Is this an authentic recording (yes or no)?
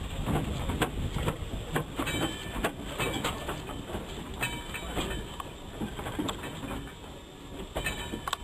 yes